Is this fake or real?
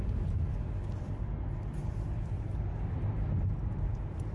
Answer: real